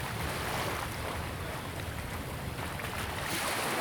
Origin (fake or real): real